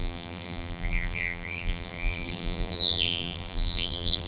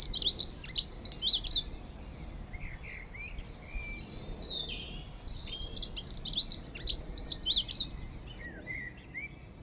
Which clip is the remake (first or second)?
first